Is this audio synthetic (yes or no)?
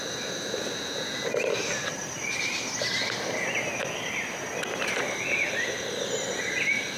no